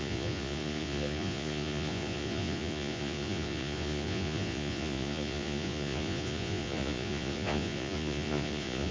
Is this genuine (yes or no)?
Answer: no